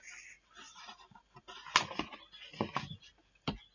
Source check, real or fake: real